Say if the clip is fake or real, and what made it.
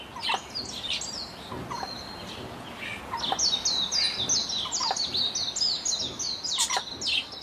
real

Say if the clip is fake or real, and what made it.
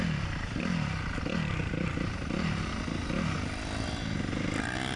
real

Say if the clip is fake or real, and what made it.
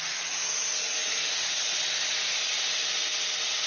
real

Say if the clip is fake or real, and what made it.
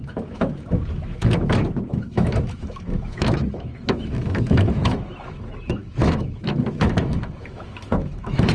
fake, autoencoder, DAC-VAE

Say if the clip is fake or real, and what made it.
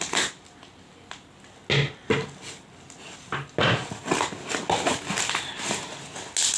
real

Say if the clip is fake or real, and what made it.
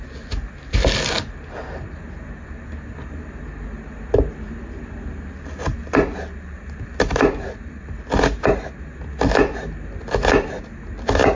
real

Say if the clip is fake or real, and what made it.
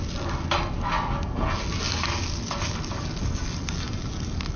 real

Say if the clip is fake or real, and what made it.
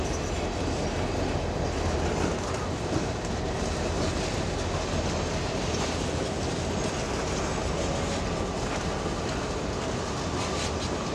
real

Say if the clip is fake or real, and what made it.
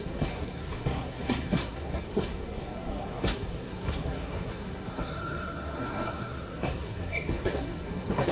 fake, codec, SNAC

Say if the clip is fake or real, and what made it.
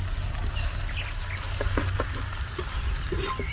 real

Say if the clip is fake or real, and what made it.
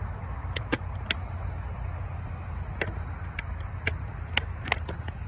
real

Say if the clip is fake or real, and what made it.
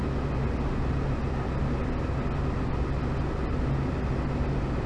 real